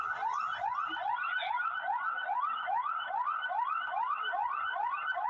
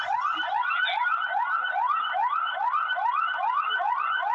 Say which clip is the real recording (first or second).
second